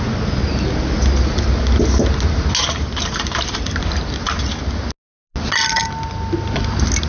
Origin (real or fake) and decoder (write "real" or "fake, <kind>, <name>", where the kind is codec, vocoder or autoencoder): real